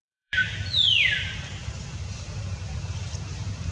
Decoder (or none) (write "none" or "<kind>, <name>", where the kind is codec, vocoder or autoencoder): vocoder, BigVGAN v2